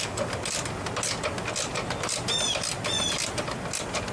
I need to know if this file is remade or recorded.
recorded